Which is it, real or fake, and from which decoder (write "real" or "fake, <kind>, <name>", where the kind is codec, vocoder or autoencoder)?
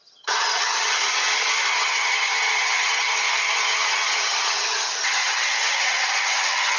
fake, vocoder, HiFi-GAN